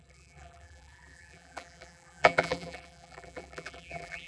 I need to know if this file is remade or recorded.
remade